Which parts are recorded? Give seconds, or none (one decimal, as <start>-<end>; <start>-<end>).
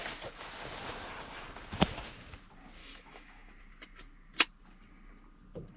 0.0-2.8; 3.5-5.8